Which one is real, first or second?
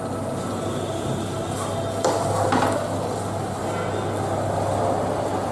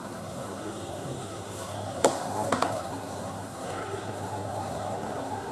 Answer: first